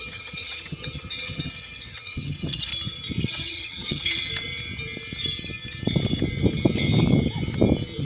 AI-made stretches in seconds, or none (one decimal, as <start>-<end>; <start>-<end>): 0.0-2.7; 3.3-4.3